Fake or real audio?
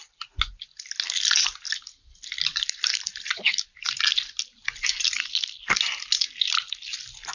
real